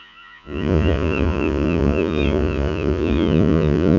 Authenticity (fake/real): fake